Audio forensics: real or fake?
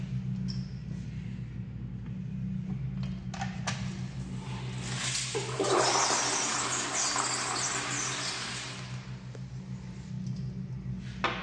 real